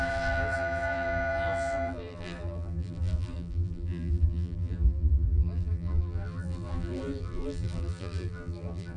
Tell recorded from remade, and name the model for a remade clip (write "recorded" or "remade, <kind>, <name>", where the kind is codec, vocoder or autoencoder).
remade, vocoder, BigVGAN v2